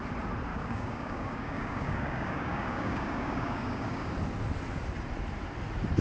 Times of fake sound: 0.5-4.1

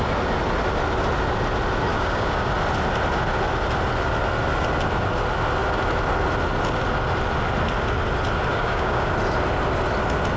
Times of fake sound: 1.9-2.5; 8.5-9.1

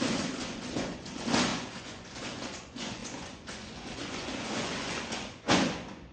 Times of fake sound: 0.0-6.1

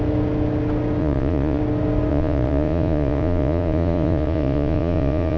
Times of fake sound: 1.0-1.6; 2.1-5.4

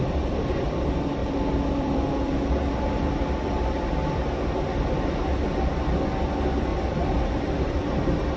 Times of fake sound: 1.2-3.9; 6.7-8.4

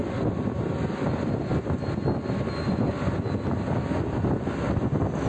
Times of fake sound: none

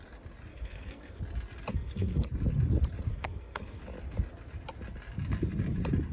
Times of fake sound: 0.5-1.2; 1.7-2.3; 3.1-3.8